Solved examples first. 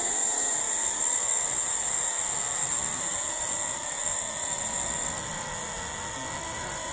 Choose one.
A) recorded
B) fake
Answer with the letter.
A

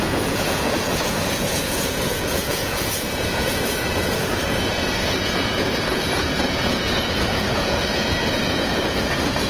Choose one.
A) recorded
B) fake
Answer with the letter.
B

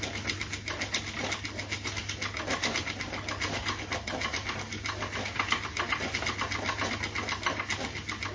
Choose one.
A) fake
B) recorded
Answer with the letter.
B